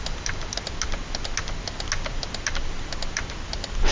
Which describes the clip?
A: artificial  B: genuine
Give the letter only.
B